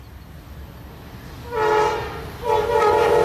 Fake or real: real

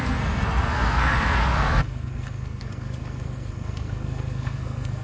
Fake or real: fake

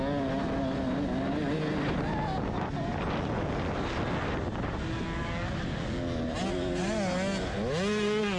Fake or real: real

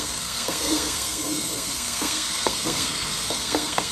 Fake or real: fake